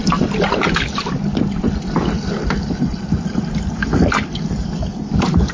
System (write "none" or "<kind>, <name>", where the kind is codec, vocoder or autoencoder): none